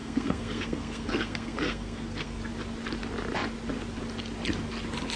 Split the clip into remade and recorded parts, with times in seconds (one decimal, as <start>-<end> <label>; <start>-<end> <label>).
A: 0.0-2.4 remade; 2.4-5.2 recorded